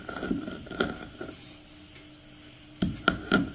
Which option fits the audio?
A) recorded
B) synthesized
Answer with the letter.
A